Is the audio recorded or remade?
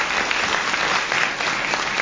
recorded